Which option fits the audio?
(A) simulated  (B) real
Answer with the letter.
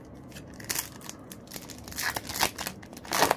B